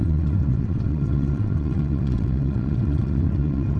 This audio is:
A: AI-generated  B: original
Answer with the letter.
A